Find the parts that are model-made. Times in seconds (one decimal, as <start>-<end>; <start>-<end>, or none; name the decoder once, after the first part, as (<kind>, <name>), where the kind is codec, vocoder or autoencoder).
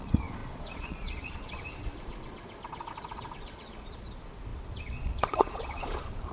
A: 0.0-6.3 (vocoder, Vocos)